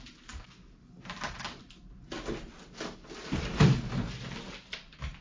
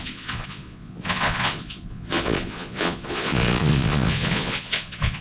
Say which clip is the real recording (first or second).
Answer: first